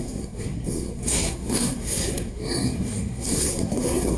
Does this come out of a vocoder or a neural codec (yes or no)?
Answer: yes